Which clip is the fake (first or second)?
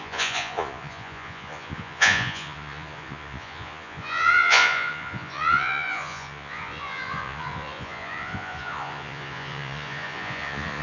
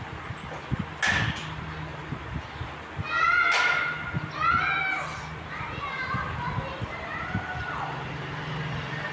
first